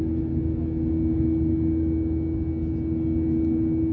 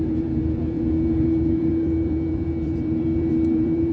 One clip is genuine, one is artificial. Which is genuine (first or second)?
first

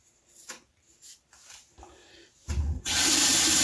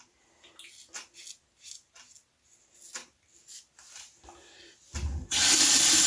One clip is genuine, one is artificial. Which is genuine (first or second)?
second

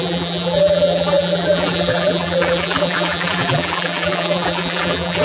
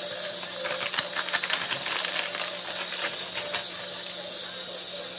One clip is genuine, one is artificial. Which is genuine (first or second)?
second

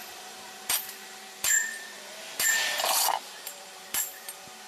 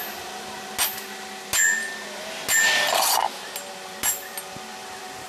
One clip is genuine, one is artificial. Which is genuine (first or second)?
second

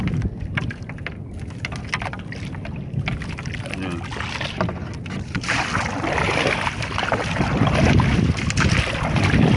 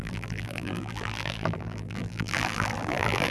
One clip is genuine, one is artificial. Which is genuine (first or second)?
first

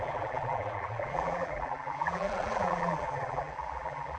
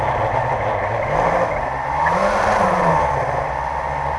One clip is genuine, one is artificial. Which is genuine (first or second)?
second